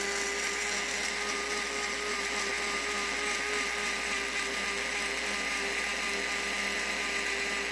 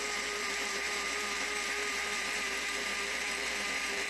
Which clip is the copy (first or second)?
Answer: second